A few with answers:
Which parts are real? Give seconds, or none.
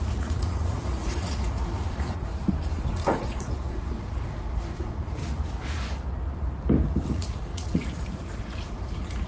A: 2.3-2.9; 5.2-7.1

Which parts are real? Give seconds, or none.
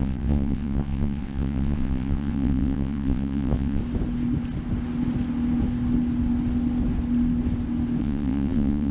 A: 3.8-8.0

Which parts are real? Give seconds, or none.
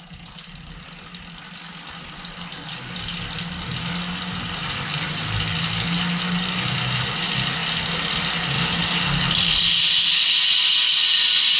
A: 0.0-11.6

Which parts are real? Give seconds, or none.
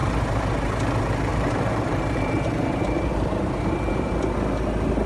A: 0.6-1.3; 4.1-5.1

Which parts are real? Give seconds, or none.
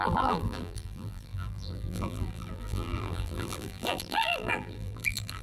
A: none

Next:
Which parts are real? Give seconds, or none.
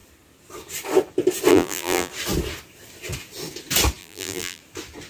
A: 0.0-1.5; 2.1-4.0; 4.6-5.1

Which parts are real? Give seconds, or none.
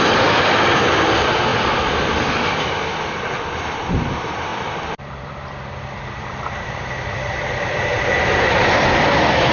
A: 0.0-1.5; 3.5-4.5; 7.7-9.5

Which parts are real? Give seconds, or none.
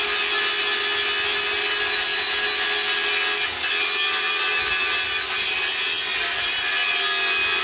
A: 0.0-7.6